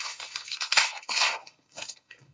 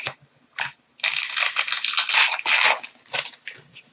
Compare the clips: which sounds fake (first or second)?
first